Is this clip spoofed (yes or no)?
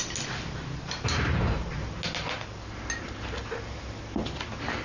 no